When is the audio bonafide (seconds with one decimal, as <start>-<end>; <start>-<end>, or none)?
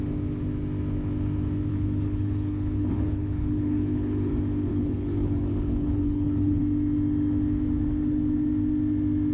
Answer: 0.0-1.7; 4.3-4.7; 6.6-9.3